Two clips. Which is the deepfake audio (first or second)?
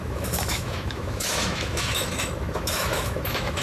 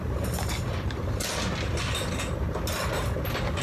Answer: first